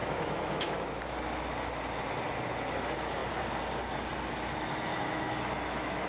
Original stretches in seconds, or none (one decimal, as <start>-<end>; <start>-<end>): 1.0-4.9